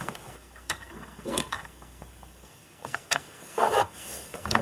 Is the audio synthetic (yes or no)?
yes